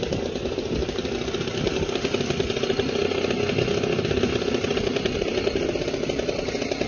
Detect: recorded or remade recorded